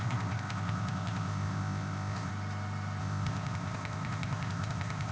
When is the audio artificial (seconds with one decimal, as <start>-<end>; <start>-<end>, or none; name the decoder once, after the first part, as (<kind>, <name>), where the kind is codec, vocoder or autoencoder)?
0.0-2.3 (codec, ZipCodec); 3.0-5.1

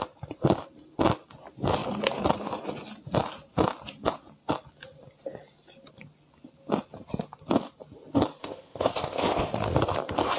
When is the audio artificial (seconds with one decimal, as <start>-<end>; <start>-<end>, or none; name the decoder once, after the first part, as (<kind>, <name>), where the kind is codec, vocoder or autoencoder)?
8.4-9.5 (codec, ZipCodec)

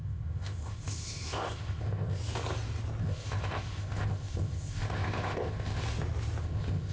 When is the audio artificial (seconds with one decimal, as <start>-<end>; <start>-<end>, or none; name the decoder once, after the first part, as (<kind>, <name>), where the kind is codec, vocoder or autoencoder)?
0.0-2.2 (codec, ZipCodec); 3.0-5.8; 6.4-6.9

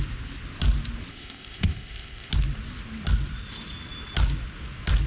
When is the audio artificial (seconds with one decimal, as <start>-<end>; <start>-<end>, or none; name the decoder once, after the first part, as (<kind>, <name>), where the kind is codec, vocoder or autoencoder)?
1.1-2.3 (codec, ZipCodec)